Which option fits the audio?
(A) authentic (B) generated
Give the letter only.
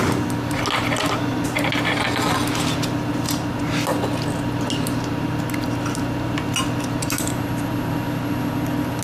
A